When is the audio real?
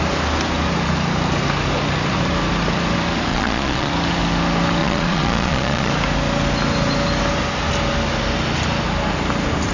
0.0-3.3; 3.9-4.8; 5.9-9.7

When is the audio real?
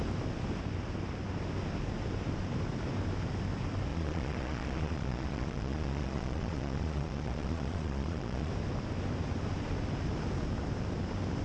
0.0-3.9; 8.5-11.4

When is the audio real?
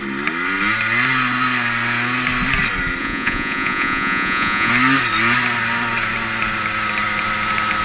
0.0-3.0; 4.7-7.8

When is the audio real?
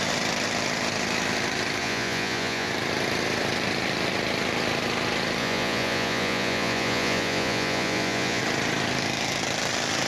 0.0-1.8; 2.7-5.4; 8.4-10.1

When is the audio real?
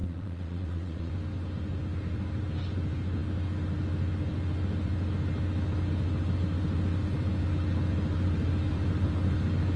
1.1-9.8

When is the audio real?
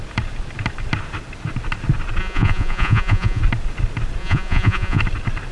0.0-2.2; 3.4-4.2; 5.0-5.5